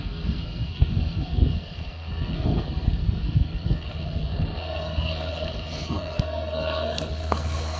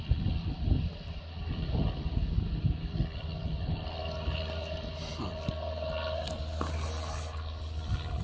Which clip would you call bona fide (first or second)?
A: second